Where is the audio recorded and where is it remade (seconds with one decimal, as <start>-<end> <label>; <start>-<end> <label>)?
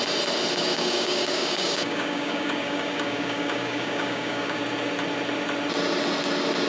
0.0-0.6 recorded; 0.6-4.6 remade; 4.6-6.7 recorded